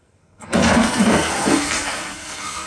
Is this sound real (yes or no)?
no